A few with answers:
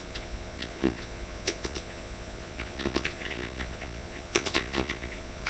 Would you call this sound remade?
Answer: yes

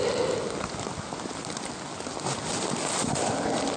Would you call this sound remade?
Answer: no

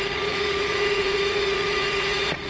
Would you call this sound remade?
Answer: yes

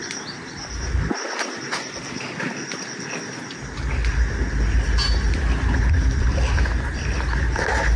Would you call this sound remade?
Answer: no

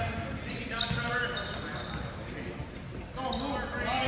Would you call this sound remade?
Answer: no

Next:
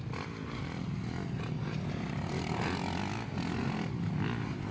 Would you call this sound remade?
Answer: no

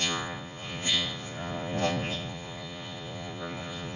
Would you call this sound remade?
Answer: yes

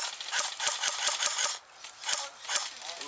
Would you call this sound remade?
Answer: no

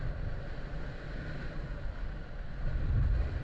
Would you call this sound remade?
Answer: no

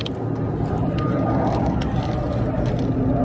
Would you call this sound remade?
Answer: no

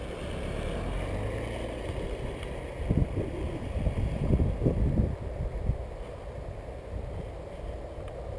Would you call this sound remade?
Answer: no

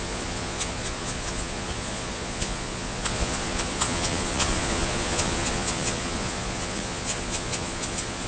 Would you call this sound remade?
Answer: yes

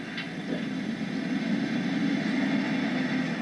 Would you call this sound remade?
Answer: no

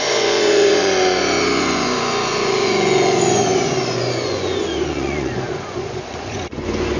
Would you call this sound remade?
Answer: yes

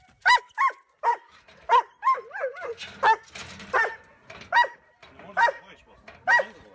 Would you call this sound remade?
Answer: no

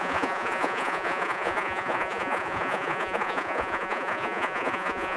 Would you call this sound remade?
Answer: yes